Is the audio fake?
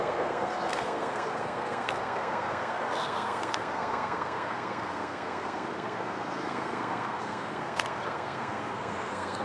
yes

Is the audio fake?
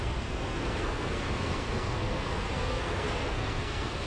yes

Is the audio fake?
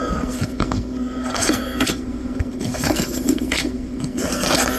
yes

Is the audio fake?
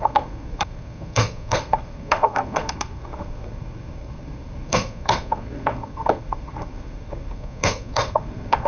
yes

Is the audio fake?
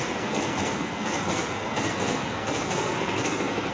yes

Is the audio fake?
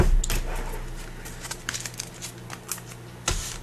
no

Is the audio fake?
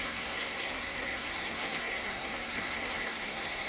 yes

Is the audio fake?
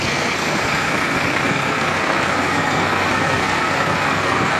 yes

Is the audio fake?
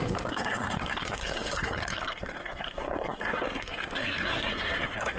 yes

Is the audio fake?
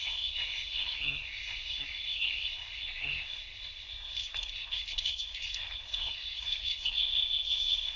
yes